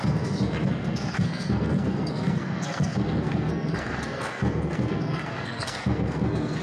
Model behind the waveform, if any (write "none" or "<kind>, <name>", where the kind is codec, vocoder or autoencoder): codec, SNAC